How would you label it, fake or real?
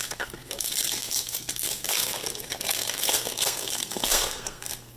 fake